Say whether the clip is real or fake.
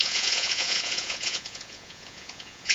fake